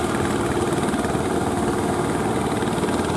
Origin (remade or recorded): recorded